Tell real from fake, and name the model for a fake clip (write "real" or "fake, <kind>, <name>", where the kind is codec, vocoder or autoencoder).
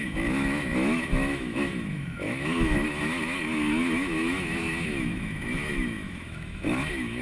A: fake, autoencoder, DAC-VAE